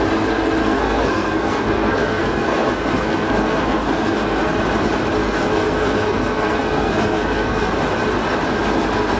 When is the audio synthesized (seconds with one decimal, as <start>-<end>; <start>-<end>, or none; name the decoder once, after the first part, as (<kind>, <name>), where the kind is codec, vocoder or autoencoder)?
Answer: 0.6-4.6 (codec, SNAC); 5.2-7.7